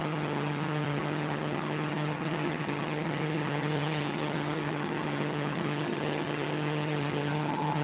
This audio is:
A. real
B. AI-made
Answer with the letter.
B